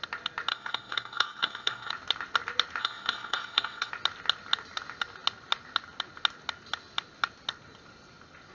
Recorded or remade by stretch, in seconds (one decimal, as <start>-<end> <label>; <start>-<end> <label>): 0.0-0.5 recorded; 0.5-1.9 remade; 1.9-2.8 recorded; 2.8-3.9 remade; 3.9-8.5 recorded